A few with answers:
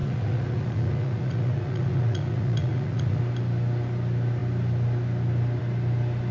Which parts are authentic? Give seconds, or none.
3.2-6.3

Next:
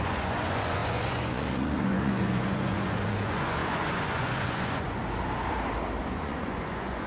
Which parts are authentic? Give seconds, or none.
5.0-6.0